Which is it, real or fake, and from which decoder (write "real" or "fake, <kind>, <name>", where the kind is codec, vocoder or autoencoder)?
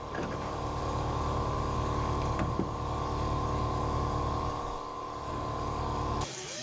fake, codec, DAC